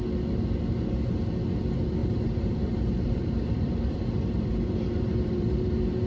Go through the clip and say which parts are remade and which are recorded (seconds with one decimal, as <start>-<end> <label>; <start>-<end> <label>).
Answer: 0.0-2.0 recorded; 2.0-6.1 remade